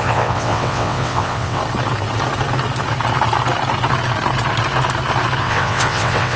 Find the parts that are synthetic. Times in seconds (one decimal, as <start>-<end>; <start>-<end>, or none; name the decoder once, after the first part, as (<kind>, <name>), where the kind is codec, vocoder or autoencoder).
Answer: 0.0-1.6 (vocoder, WaveNeXt); 5.4-6.4